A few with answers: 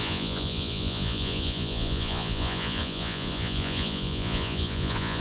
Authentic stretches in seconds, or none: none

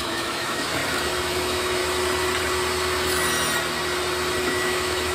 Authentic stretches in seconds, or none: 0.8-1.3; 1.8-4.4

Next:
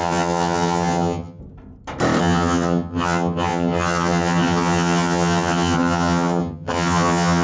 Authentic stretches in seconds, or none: 1.4-2.2

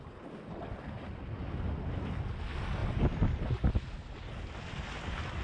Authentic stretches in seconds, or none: 0.0-5.4

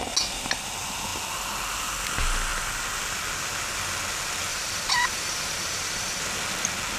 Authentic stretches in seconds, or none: 0.0-4.5; 6.2-7.0

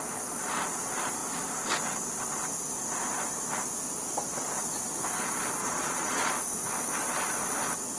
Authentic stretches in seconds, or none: 0.0-5.6; 6.3-8.0

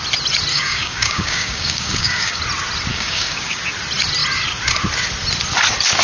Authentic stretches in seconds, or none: 0.0-0.5; 2.4-2.9; 3.6-6.0

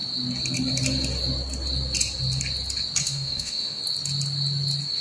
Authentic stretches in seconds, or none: 0.0-3.0; 3.8-5.0